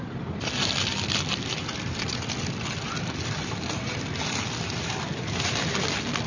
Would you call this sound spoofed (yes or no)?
no